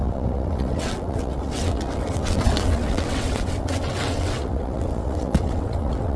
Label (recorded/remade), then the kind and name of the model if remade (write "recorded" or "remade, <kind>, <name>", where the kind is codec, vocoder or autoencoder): remade, vocoder, WaveNeXt